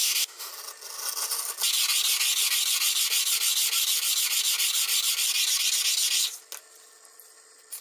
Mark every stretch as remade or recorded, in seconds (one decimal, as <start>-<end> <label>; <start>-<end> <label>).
0.0-0.5 remade; 0.5-7.8 recorded